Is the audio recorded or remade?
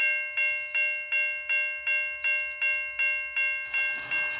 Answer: recorded